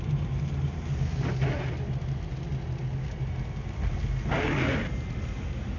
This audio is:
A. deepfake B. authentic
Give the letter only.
B